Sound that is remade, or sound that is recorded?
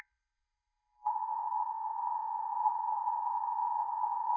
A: remade